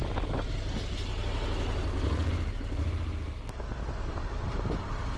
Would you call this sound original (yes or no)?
yes